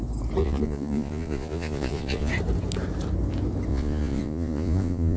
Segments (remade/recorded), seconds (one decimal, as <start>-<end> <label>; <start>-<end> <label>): 0.0-0.4 recorded; 0.4-2.3 remade; 2.3-3.7 recorded; 3.7-5.2 remade